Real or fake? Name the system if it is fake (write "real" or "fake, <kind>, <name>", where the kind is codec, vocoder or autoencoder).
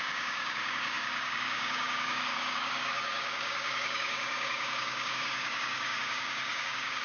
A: fake, codec, DAC